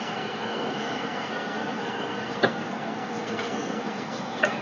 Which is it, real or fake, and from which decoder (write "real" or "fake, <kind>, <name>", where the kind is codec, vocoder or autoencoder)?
fake, codec, SNAC